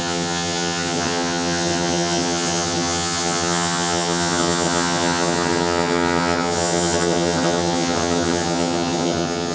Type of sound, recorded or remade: remade